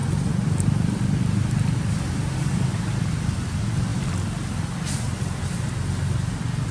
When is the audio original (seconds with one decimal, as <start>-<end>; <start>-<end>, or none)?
0.0-6.7